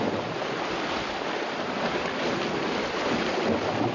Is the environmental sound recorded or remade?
recorded